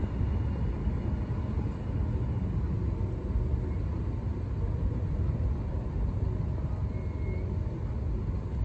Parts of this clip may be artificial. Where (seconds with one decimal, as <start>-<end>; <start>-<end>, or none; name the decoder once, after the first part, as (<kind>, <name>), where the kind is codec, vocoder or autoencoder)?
4.3-6.7 (vocoder, BigVGAN v2)